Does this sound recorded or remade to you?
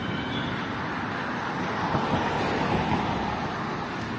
recorded